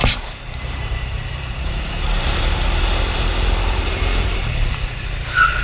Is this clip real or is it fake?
fake